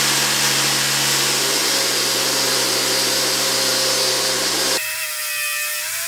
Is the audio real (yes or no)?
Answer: yes